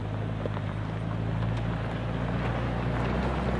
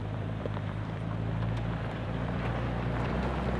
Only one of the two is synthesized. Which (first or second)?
second